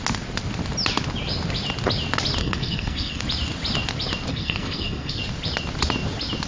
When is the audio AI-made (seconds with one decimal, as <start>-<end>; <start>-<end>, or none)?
2.4-3.2; 4.3-5.2